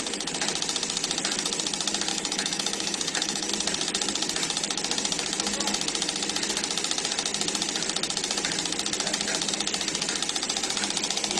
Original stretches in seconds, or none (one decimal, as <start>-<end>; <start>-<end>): 0.0-2.1; 3.5-11.4